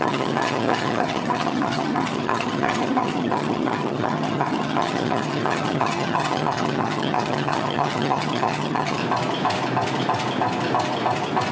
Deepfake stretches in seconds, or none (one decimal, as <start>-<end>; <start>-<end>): 0.0-9.0